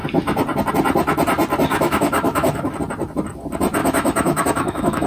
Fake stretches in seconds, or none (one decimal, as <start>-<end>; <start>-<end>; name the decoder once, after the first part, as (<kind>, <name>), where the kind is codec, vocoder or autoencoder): 1.7-2.7 (autoencoder, DAC-VAE); 3.8-5.1